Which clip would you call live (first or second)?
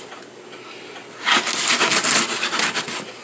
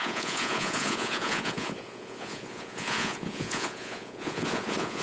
first